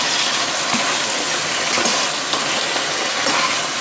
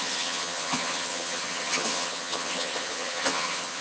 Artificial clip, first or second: second